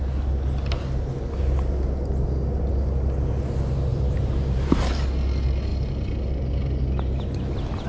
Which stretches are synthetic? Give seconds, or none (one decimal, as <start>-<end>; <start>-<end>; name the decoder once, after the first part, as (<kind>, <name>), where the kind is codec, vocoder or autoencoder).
3.9-4.9 (vocoder, BigVGAN v2)